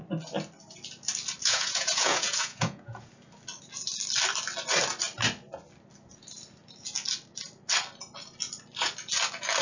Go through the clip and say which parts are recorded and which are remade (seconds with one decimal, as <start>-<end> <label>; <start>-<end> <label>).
0.0-1.4 recorded; 1.4-3.1 remade; 3.1-9.6 recorded